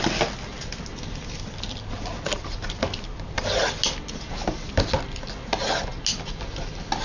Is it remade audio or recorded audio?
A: recorded